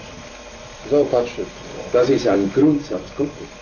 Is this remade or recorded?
recorded